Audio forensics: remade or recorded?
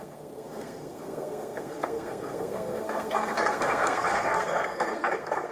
remade